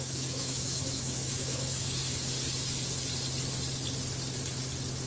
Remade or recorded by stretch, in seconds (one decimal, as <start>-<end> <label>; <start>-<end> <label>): 0.0-2.0 remade; 2.0-5.1 recorded